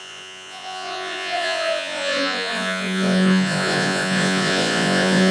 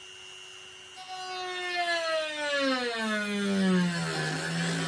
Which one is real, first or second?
second